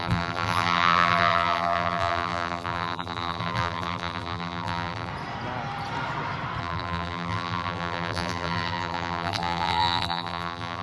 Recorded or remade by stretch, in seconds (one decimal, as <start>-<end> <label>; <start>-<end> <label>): 0.0-5.1 remade; 5.1-6.6 recorded; 6.6-10.8 remade

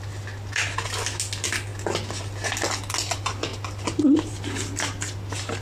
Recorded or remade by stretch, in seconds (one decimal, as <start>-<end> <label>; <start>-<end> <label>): 0.0-1.7 recorded; 1.7-2.2 remade; 2.2-3.5 recorded; 3.5-4.3 remade; 4.3-5.6 recorded

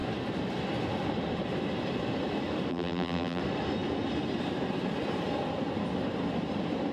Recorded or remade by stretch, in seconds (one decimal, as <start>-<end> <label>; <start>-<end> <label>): 0.0-2.7 recorded; 2.7-3.4 remade; 3.4-6.9 recorded